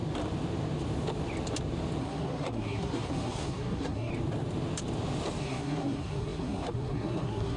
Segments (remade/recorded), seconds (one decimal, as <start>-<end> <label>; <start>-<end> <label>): 0.0-2.0 recorded; 2.0-4.1 remade; 4.1-5.4 recorded; 5.4-7.6 remade